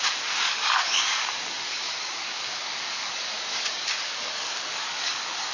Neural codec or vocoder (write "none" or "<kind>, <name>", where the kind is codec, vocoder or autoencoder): codec, DAC